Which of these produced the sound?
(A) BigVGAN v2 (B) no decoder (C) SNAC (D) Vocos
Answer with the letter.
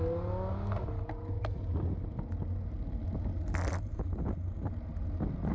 B